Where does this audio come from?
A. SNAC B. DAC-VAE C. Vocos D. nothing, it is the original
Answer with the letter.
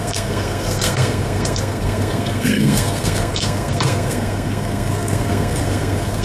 A